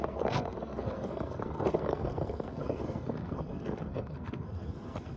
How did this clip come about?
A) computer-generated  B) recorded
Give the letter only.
A